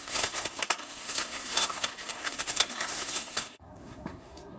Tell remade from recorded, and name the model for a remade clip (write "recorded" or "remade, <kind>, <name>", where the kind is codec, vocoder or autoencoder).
remade, codec, SNAC